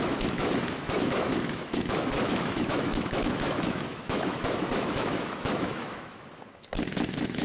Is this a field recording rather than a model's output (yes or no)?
no